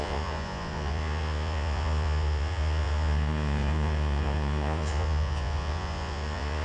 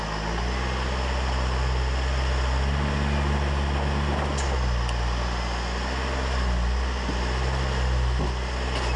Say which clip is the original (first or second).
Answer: second